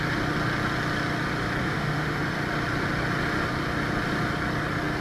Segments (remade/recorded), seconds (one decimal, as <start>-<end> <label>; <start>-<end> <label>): 0.0-1.6 recorded; 1.6-2.2 remade; 2.2-5.0 recorded